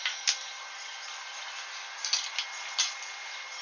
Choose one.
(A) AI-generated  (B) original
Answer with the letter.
B